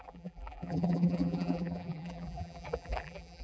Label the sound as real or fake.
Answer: fake